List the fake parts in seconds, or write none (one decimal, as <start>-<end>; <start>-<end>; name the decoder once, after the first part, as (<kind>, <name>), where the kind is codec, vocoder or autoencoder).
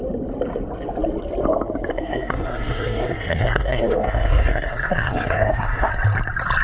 1.9-5.9 (codec, SNAC)